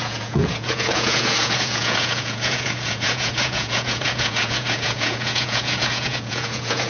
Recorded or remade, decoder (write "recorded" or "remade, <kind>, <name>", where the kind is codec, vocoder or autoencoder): remade, vocoder, Vocos